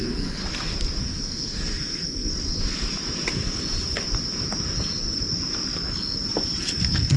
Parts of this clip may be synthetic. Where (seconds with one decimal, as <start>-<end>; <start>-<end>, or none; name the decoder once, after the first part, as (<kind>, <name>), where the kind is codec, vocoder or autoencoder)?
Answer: 0.0-0.4 (codec, SNAC); 1.0-2.3; 6.6-7.2